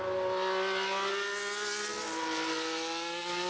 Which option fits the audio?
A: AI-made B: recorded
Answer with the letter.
B